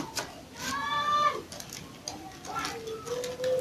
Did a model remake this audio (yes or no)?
no